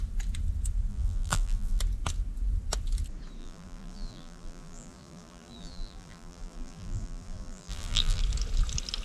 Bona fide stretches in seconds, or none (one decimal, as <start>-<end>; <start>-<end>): 0.0-0.9; 1.8-3.4; 8.2-9.0